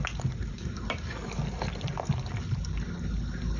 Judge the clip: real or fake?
real